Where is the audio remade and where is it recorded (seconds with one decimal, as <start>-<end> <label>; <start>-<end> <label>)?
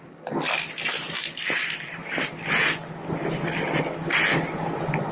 0.0-5.1 recorded